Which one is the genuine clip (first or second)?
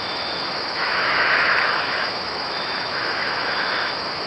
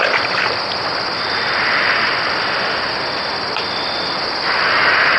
second